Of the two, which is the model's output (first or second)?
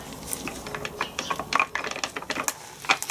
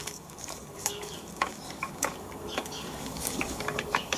second